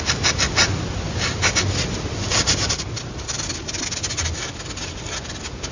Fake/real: real